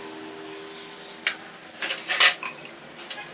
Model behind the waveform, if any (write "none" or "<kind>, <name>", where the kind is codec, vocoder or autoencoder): none